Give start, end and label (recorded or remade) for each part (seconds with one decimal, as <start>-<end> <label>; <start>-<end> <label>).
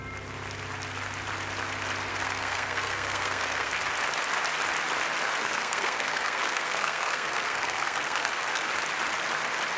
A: 0.0-2.1 recorded; 2.1-3.8 remade; 3.8-5.4 recorded; 5.4-8.7 remade; 8.7-9.8 recorded